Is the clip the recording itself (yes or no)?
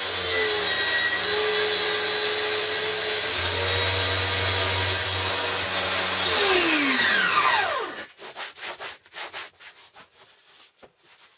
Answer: yes